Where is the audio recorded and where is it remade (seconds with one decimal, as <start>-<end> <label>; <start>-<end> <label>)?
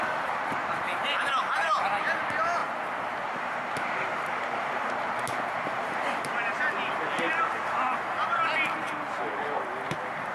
0.0-10.3 recorded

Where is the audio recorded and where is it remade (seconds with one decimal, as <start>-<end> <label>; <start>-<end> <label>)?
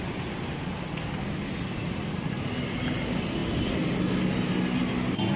0.0-5.4 recorded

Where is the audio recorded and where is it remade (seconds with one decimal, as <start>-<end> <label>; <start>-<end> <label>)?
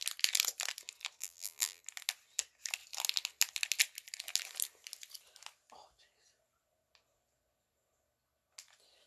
0.0-1.2 recorded; 1.2-1.8 remade; 1.8-9.1 recorded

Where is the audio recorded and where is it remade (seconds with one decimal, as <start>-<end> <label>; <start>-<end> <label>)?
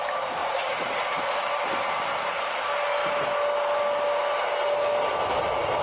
0.0-0.4 recorded; 0.4-1.5 remade; 1.5-5.8 recorded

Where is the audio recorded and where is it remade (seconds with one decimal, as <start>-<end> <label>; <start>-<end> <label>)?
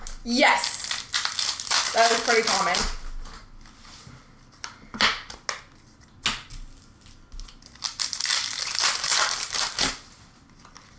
0.0-9.1 recorded; 9.1-9.9 remade; 9.9-11.0 recorded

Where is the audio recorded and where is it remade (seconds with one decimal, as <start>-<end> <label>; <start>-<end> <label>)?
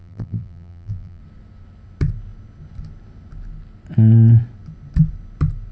0.0-1.2 remade; 1.2-5.7 recorded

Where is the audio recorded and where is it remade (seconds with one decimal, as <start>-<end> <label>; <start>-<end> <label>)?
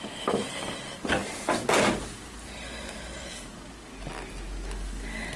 0.0-5.4 recorded